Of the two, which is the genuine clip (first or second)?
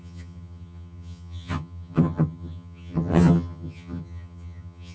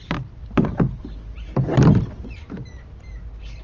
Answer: second